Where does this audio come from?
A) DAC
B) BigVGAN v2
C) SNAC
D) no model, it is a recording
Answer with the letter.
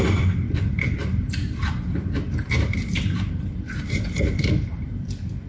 B